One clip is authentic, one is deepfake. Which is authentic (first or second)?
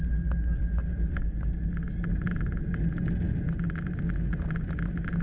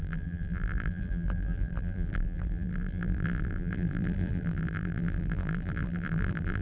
first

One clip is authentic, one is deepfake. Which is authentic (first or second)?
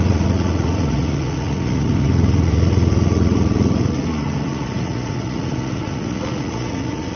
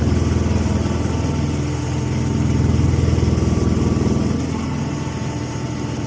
second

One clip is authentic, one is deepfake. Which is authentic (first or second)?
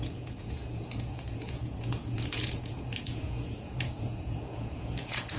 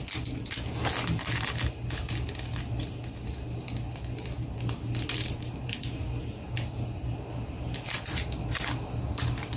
second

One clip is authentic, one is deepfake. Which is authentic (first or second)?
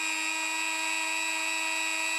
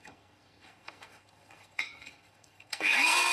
first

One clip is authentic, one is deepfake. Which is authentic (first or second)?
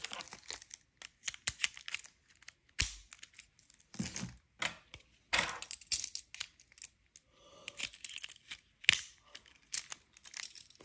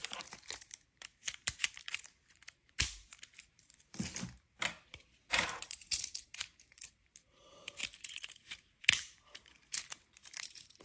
first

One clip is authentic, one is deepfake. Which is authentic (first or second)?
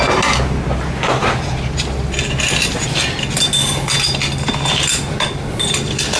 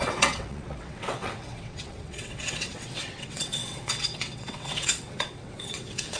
first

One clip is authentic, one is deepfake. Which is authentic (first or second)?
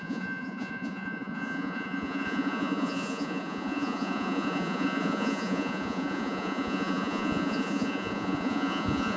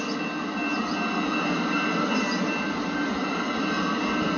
second